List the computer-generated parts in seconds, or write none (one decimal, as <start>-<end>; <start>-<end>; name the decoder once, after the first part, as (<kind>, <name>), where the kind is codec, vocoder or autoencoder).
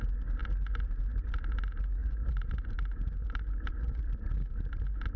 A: 2.0-4.0 (vocoder, BigVGAN v2)